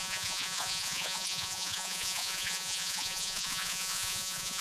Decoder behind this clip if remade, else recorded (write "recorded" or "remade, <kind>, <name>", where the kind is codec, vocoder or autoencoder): remade, vocoder, Vocos